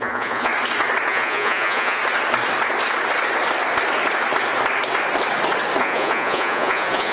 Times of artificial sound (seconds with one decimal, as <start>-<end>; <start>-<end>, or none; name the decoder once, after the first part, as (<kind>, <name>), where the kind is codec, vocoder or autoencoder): 0.0-0.5 (vocoder, Vocos); 1.1-2.0; 5.8-7.1